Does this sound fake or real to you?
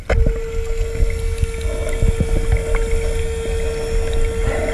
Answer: real